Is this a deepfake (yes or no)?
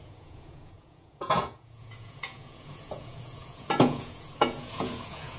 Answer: yes